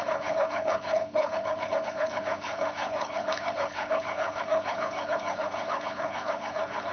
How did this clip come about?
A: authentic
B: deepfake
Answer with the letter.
B